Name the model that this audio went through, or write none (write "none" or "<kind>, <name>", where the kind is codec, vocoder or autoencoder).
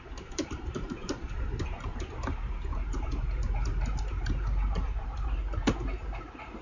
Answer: vocoder, BigVGAN v2